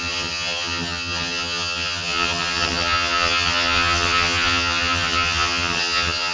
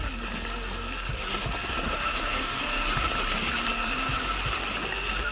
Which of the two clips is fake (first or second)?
first